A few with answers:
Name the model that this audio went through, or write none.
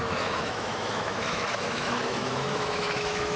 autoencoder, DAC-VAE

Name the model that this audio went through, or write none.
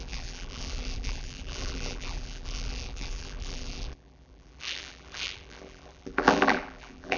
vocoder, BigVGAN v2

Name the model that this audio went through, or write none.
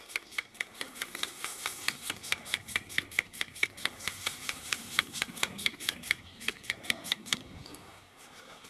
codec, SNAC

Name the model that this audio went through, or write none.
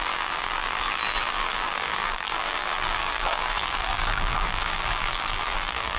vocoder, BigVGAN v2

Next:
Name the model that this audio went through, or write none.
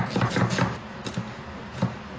none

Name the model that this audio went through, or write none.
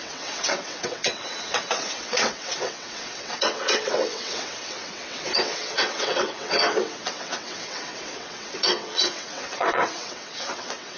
vocoder, WaveNeXt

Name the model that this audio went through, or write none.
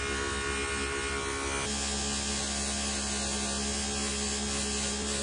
none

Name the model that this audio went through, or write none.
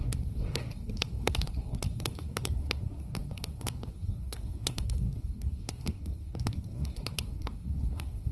codec, SNAC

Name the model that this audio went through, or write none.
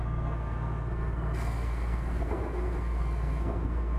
codec, SNAC